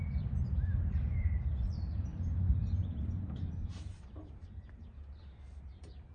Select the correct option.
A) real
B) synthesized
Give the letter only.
B